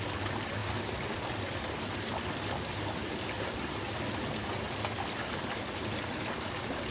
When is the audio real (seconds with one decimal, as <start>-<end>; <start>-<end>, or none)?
0.0-6.9